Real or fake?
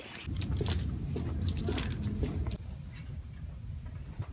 real